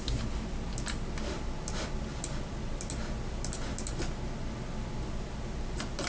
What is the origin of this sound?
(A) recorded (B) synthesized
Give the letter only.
A